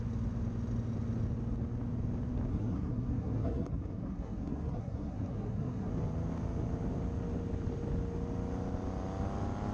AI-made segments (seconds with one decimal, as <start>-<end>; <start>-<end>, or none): 2.5-5.9